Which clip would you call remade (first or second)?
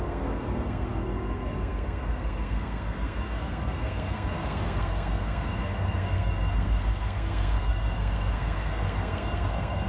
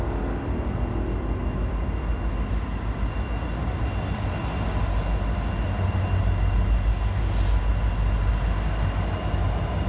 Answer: first